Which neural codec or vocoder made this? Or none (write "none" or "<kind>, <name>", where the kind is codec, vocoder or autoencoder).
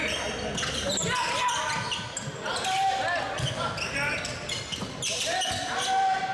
none